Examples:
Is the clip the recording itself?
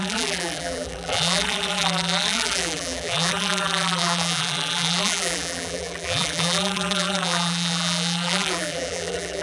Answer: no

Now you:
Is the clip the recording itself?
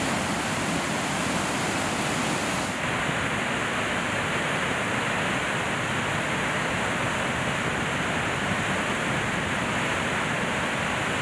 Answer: yes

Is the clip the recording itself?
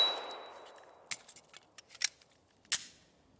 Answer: yes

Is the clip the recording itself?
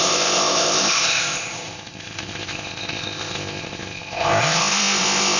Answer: no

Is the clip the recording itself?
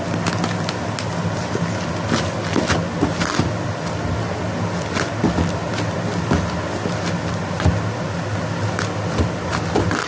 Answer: yes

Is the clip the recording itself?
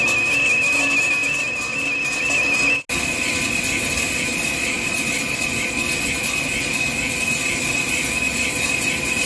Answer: yes